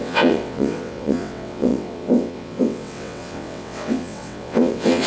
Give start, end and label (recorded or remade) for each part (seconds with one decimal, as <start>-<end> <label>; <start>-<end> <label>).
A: 0.0-5.1 remade